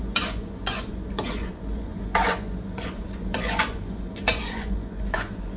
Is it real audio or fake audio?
fake